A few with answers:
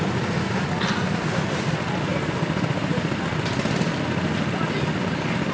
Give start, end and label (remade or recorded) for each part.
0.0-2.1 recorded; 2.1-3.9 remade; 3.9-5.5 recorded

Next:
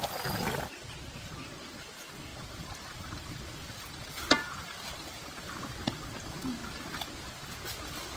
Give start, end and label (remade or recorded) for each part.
0.0-8.2 recorded

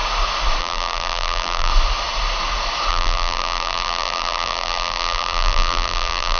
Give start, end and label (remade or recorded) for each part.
0.0-0.6 recorded; 0.6-1.7 remade; 1.7-2.9 recorded; 2.9-6.4 remade

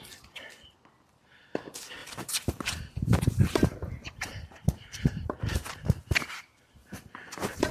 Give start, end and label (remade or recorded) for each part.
0.0-2.0 recorded; 2.0-5.7 remade; 5.7-6.8 recorded; 6.8-7.7 remade

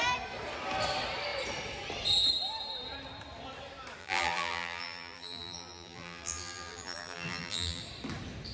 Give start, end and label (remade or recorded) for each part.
0.0-4.0 recorded; 4.0-7.8 remade; 7.8-8.5 recorded